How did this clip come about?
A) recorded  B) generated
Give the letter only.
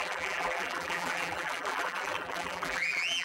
B